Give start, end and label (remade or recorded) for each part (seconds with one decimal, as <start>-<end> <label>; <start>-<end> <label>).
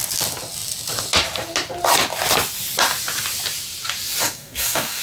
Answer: 0.0-4.2 recorded; 4.2-5.0 remade